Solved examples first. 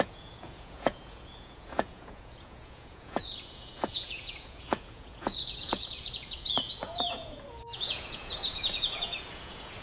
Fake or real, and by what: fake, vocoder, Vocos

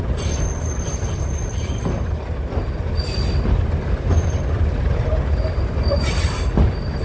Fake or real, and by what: real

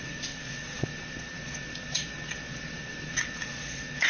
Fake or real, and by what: fake, vocoder, Vocos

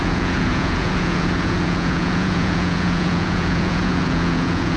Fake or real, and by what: fake, vocoder, Vocos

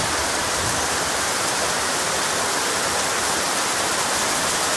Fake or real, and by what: real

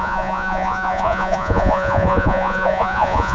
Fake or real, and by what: fake, vocoder, Vocos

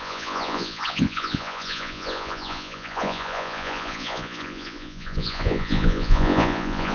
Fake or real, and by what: fake, vocoder, Vocos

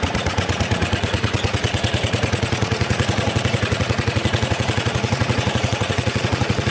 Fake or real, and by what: fake, vocoder, Vocos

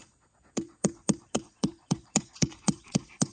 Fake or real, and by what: fake, vocoder, Vocos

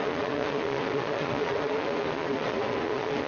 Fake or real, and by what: fake, vocoder, Vocos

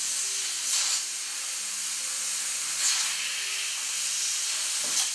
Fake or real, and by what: real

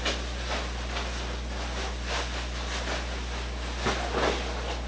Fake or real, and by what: real